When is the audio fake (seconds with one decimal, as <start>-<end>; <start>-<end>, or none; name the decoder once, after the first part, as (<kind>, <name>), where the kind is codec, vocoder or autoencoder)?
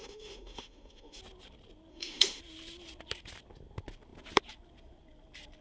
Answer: 0.0-1.2 (autoencoder, DAC-VAE); 1.9-2.4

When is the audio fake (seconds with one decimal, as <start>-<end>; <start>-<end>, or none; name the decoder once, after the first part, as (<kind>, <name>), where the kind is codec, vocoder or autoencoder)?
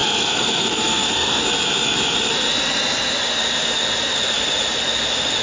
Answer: 0.0-1.4 (codec, SNAC)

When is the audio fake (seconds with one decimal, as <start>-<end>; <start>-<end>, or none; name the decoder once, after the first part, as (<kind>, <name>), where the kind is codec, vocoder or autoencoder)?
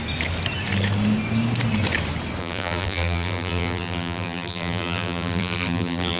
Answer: 2.4-6.2 (vocoder, BigVGAN v2)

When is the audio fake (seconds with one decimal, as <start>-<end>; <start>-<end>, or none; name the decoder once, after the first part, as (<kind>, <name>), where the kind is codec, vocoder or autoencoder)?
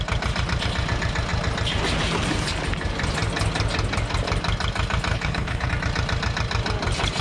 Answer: 5.1-5.7 (codec, HILCodec)